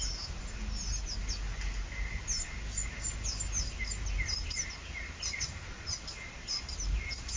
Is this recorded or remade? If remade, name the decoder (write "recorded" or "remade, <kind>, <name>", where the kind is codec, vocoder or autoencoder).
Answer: recorded